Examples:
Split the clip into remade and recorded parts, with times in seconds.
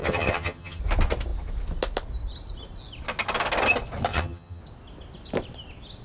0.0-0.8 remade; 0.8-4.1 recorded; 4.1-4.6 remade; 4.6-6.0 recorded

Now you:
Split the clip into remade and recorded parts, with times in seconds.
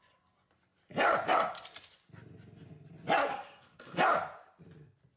0.0-3.3 recorded; 3.3-4.0 remade; 4.0-5.2 recorded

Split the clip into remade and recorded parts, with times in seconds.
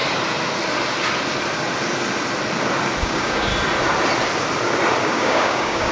0.0-3.0 recorded; 3.0-3.5 remade; 3.5-5.0 recorded; 5.0-5.9 remade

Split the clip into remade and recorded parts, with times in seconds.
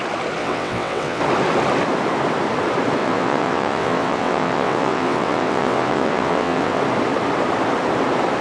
0.0-0.4 recorded; 0.4-1.2 remade; 1.2-3.0 recorded; 3.0-6.8 remade; 6.8-8.4 recorded